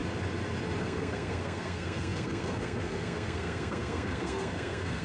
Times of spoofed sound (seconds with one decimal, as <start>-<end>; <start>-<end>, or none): 0.8-5.0